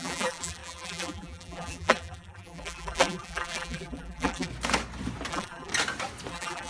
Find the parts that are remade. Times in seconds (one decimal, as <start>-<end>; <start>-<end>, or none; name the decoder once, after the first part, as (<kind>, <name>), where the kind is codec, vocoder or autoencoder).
0.0-4.5 (vocoder, BigVGAN v2); 5.3-5.7; 6.3-6.7